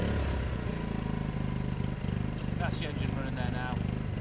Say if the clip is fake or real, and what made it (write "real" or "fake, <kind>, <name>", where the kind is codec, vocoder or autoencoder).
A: real